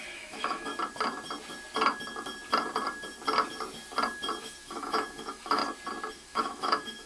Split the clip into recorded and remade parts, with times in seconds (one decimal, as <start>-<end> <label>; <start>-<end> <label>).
0.0-0.7 remade; 0.7-4.4 recorded; 4.4-5.6 remade; 5.6-6.1 recorded; 6.1-7.1 remade